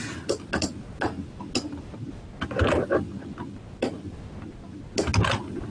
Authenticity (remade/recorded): recorded